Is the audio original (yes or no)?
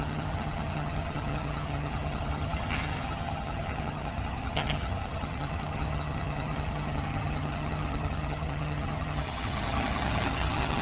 no